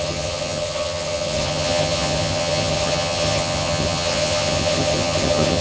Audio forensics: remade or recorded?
remade